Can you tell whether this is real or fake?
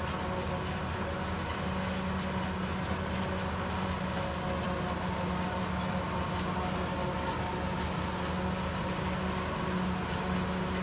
real